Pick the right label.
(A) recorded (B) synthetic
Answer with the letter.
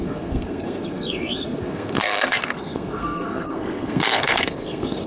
B